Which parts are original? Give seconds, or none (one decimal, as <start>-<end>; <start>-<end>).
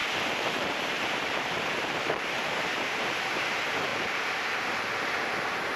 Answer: 3.5-3.9; 4.4-5.8